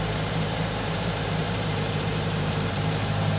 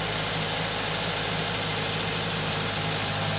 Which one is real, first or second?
second